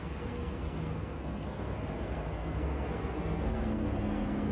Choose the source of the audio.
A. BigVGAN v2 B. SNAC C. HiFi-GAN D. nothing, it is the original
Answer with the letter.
B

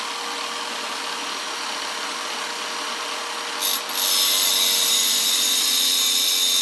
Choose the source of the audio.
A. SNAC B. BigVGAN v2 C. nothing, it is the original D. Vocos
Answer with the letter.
C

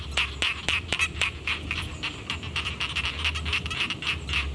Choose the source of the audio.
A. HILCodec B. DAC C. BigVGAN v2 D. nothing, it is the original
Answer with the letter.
D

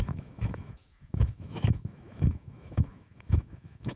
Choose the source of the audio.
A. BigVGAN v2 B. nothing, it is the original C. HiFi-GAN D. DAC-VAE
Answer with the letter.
D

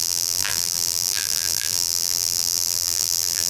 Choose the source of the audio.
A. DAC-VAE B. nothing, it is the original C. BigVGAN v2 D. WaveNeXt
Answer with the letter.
C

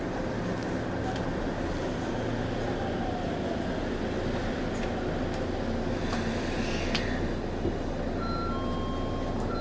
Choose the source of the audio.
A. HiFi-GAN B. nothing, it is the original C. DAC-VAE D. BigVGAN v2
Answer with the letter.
B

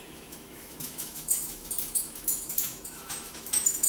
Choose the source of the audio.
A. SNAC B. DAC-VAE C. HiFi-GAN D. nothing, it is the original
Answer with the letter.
B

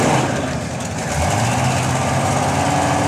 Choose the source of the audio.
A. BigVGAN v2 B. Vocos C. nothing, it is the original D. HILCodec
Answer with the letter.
C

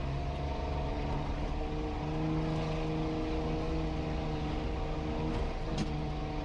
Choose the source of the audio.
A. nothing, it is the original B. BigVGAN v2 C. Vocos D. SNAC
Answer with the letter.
A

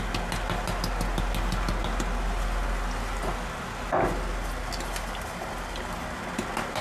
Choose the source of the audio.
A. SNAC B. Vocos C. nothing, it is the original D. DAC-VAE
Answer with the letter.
C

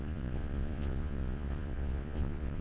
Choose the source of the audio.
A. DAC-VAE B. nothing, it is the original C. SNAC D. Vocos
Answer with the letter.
D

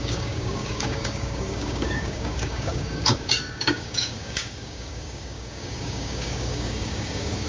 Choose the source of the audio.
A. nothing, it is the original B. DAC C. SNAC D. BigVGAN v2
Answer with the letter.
B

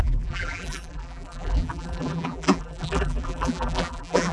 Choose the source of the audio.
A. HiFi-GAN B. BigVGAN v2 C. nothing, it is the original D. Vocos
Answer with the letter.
B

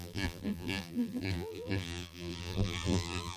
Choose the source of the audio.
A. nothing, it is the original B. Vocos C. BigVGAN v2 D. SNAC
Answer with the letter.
C